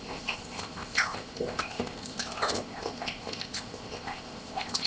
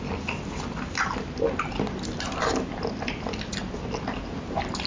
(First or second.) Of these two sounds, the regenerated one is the first